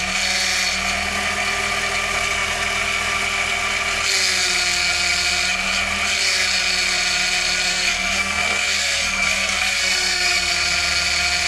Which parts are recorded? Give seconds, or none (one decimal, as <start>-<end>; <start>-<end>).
0.0-7.7; 10.5-11.5

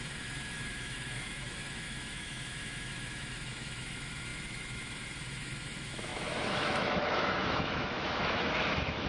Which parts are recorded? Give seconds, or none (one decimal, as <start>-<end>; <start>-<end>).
none

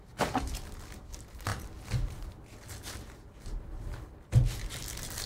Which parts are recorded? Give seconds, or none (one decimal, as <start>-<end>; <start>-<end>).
0.0-5.3

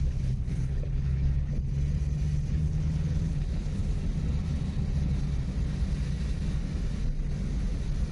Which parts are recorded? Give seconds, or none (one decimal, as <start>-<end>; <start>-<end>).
1.5-2.5; 3.8-8.1